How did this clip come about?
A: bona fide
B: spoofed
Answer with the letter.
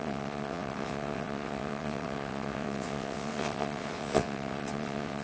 B